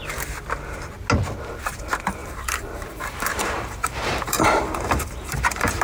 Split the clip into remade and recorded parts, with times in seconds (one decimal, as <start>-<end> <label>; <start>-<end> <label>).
0.0-2.2 recorded; 2.2-5.8 remade